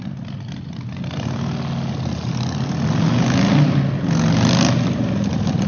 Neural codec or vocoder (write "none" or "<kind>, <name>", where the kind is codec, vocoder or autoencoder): none